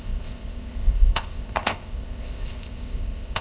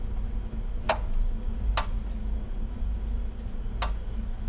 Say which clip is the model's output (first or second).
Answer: first